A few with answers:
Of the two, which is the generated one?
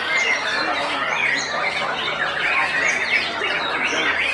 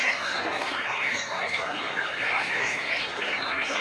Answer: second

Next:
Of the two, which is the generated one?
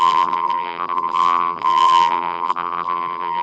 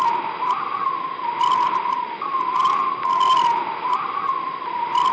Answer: first